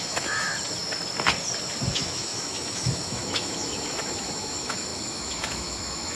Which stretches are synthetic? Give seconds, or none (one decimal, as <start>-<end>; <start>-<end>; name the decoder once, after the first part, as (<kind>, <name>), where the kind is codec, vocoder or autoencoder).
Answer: 0.0-0.5 (autoencoder, DAC-VAE); 1.9-6.1